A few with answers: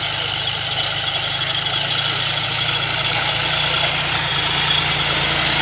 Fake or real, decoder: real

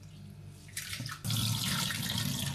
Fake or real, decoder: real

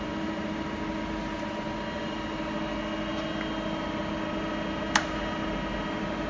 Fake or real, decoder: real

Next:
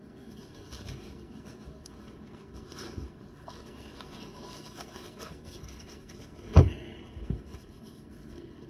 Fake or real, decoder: fake, codec, SNAC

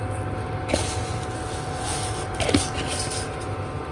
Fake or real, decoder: real